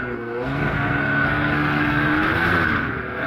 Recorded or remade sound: remade